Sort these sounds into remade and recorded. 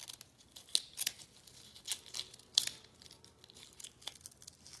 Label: recorded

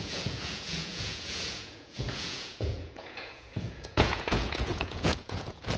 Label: remade